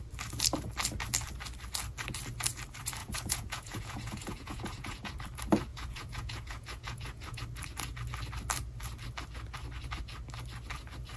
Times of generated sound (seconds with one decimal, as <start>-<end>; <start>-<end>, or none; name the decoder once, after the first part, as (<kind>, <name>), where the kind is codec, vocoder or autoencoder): 3.0-5.1 (vocoder, Vocos); 5.7-7.4